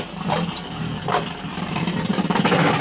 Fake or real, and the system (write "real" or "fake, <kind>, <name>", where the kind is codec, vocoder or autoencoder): fake, vocoder, BigVGAN v2